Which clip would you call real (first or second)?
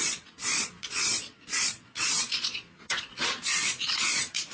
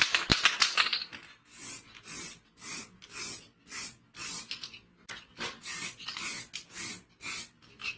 second